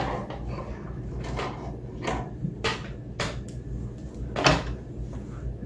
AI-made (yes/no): no